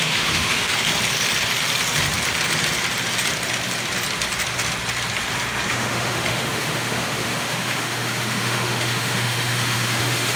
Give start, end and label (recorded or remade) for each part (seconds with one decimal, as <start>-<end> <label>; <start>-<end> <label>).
0.0-0.7 remade; 0.7-5.7 recorded; 5.7-10.4 remade